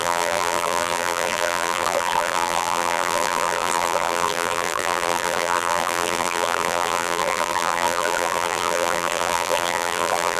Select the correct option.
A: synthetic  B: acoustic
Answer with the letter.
A